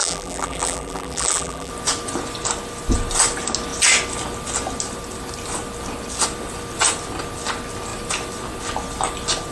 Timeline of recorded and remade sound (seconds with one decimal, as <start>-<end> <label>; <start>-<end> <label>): 0.0-1.7 remade; 1.7-9.5 recorded